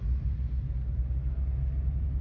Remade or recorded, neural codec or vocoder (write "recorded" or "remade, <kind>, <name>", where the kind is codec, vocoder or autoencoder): recorded